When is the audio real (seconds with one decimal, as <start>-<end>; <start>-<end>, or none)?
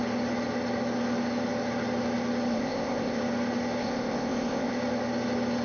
0.0-2.5; 3.2-3.8; 4.7-5.6